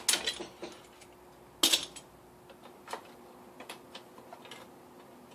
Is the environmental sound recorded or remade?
recorded